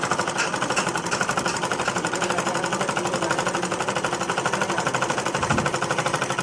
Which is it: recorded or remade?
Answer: recorded